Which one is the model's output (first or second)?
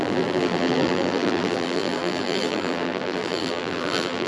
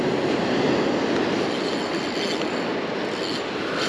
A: first